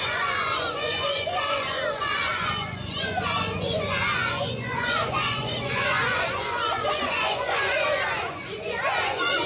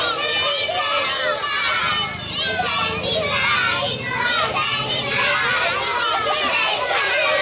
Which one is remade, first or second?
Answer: first